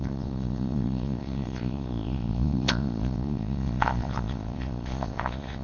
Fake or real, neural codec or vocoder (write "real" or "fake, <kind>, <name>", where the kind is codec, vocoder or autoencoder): fake, vocoder, Vocos